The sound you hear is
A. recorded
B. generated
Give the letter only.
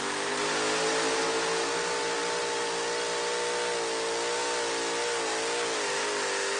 A